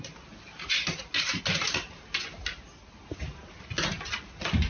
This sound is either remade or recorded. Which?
recorded